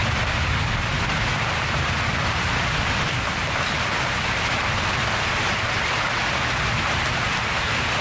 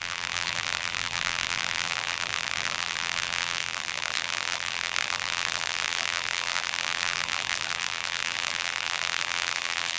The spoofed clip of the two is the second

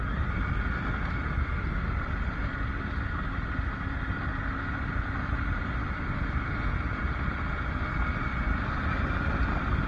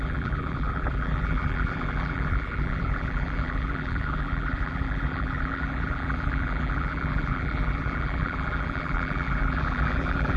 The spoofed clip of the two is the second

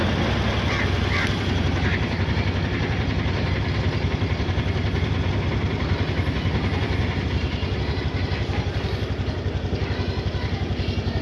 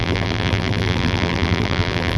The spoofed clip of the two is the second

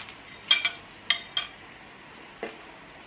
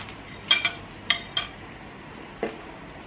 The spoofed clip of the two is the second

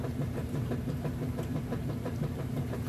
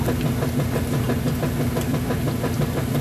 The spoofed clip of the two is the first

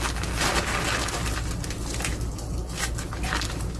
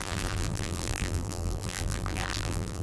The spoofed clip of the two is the second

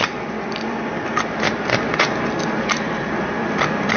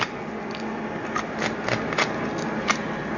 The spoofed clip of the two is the first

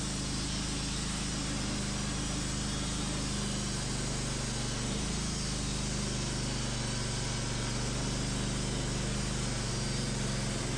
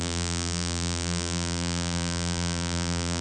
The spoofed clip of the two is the second